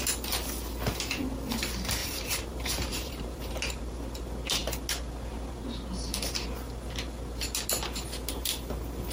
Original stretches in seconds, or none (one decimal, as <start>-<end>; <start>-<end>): 0.0-2.0; 3.8-9.1